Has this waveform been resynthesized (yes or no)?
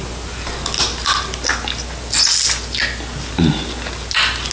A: no